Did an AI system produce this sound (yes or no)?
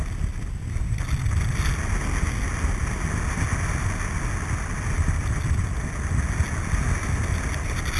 no